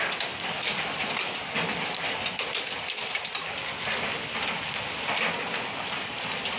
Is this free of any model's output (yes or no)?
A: yes